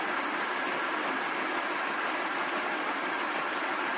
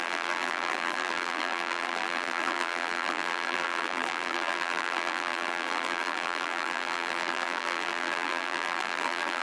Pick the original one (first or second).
first